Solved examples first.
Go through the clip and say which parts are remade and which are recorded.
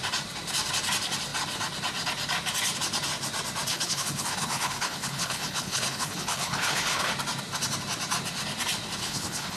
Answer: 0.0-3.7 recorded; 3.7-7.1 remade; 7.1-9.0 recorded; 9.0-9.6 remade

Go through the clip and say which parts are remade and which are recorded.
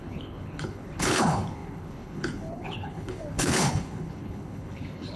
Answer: 0.0-5.2 remade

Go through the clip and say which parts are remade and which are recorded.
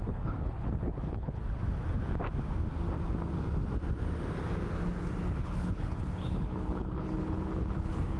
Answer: 0.0-1.6 remade; 1.6-5.4 recorded; 5.4-8.2 remade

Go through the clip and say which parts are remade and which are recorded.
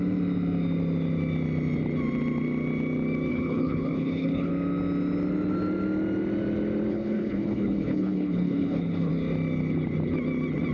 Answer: 0.0-3.3 recorded; 3.3-4.5 remade; 4.5-6.9 recorded; 6.9-9.1 remade; 9.1-10.7 recorded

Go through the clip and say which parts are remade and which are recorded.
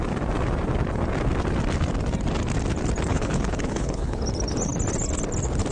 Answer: 0.0-3.1 recorded; 3.1-4.2 remade; 4.2-5.7 recorded